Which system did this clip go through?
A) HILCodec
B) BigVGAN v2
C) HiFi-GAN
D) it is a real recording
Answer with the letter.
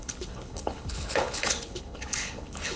A